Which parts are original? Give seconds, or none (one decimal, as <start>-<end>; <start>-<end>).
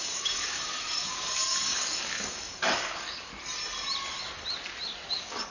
3.3-5.1